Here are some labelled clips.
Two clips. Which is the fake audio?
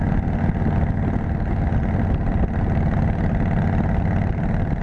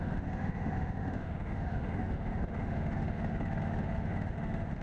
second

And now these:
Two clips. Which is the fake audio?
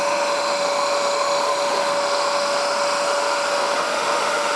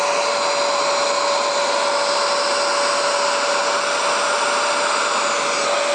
first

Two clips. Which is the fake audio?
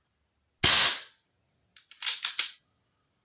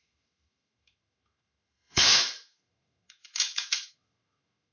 second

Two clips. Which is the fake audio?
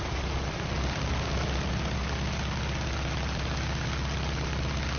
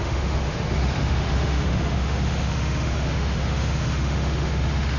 second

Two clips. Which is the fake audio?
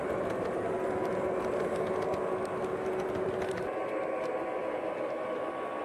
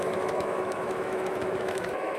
second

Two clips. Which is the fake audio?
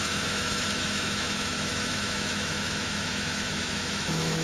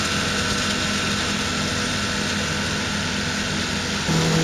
first